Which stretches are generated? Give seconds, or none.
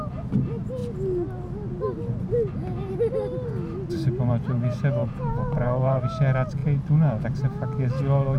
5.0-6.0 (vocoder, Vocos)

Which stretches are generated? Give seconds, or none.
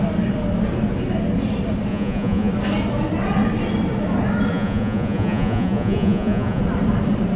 1.9-2.5 (vocoder, Vocos); 4.5-6.6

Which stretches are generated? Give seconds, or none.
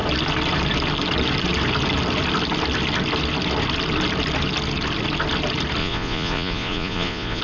5.8-7.4 (vocoder, Vocos)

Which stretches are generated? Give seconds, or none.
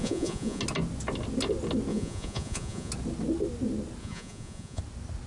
0.0-0.6 (vocoder, Vocos); 1.9-2.9; 4.0-4.8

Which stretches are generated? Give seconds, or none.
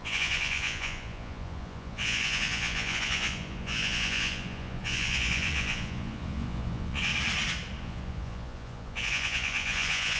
0.0-7.1 (vocoder, Vocos); 7.8-10.2